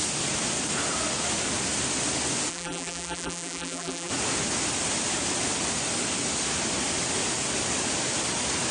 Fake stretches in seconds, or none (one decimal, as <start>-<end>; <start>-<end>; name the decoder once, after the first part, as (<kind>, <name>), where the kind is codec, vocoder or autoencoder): 2.5-4.1 (vocoder, BigVGAN v2)